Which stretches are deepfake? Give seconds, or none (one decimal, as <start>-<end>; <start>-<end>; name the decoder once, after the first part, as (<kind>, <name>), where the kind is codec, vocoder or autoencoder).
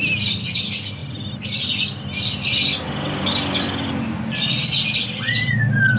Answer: none